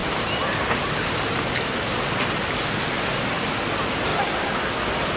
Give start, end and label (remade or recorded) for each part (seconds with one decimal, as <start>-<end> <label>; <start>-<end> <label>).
0.0-4.1 remade; 4.1-5.2 recorded